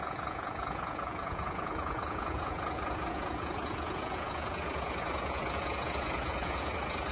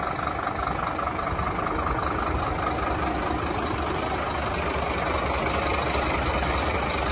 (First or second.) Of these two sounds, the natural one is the second